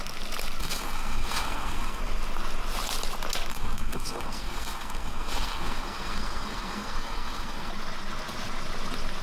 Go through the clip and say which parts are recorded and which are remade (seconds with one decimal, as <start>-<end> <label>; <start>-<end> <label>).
0.0-0.6 recorded; 0.6-2.0 remade; 2.0-3.5 recorded; 3.5-7.7 remade; 7.7-9.2 recorded

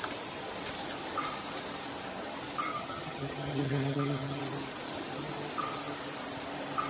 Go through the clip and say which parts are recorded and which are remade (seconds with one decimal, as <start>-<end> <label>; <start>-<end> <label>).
0.0-2.7 recorded; 2.7-4.4 remade; 4.4-6.9 recorded